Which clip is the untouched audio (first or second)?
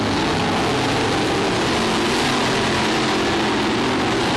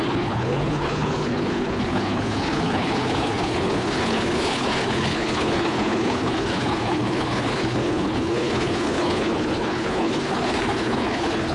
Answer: first